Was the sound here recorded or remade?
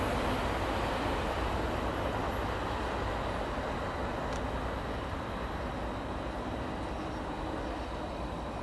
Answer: recorded